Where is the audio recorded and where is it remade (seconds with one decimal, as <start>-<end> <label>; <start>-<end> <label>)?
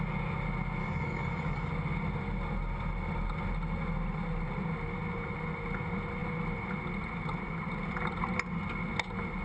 0.0-0.8 recorded; 0.8-1.7 remade; 1.7-9.4 recorded